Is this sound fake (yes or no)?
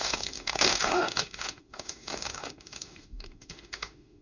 yes